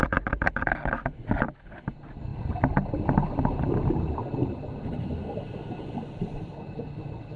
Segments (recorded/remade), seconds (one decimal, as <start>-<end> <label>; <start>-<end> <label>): 0.0-7.4 recorded